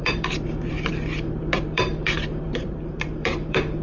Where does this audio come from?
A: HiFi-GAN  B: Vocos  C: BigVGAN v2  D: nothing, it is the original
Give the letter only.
C